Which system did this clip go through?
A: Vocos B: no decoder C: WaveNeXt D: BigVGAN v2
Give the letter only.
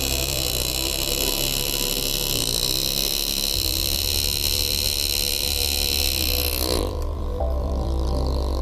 D